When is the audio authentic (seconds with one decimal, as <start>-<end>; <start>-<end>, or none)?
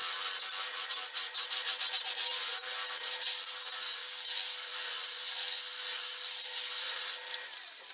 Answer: 0.0-7.9